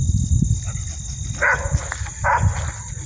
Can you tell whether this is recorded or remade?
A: recorded